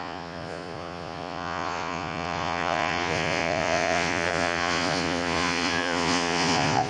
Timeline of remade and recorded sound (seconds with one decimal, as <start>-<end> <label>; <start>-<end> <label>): 0.0-6.9 remade